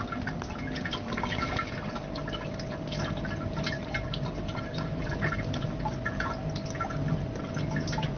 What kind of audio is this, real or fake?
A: real